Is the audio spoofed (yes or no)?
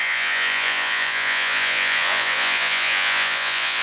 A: yes